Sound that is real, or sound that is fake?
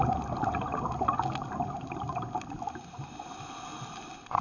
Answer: real